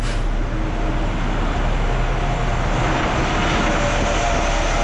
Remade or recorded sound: recorded